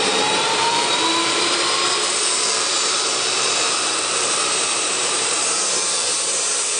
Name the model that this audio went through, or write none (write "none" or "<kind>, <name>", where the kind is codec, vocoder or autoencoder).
vocoder, BigVGAN v2